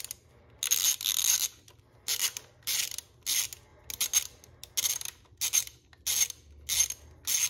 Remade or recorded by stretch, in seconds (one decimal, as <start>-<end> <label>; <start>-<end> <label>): 0.0-7.5 recorded